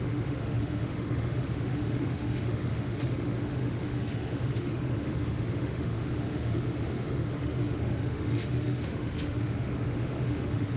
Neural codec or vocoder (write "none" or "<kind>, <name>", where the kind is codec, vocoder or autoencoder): autoencoder, DAC-VAE